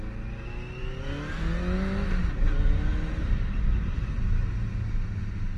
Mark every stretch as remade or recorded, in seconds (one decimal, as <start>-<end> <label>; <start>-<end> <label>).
0.0-5.6 recorded